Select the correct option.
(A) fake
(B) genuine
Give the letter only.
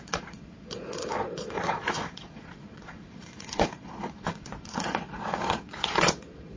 A